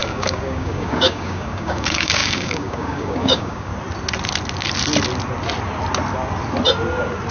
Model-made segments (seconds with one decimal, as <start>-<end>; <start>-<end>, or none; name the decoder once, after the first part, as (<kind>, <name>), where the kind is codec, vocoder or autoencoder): 0.0-3.7 (codec, DAC)